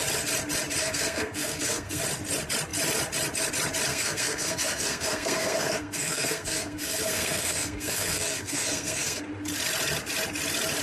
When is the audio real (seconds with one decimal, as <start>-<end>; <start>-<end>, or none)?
0.0-0.8; 2.0-3.9; 9.2-10.8